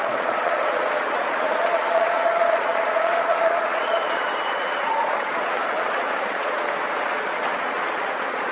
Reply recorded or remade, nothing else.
remade